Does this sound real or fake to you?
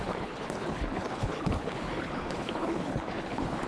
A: fake